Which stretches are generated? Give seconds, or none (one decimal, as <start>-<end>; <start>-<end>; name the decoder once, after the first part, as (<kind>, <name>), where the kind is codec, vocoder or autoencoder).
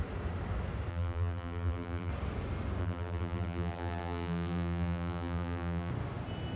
0.9-2.1 (vocoder, BigVGAN v2); 2.8-5.9